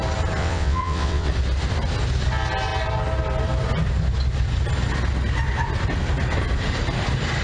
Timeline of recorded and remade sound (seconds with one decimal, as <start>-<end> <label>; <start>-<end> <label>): 0.0-0.4 recorded; 0.4-1.3 remade; 1.3-7.4 recorded